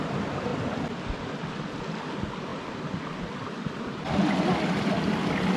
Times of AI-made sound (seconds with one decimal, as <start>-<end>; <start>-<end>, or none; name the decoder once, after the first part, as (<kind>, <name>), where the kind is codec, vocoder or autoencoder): none